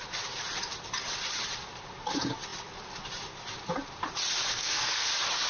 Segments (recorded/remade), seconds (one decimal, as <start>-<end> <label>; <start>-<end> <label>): 0.0-4.5 recorded; 4.5-5.1 remade; 5.1-5.5 recorded